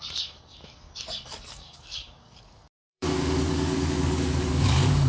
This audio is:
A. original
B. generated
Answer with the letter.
B